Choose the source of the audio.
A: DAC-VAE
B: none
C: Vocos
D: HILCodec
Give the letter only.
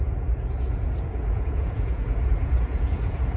C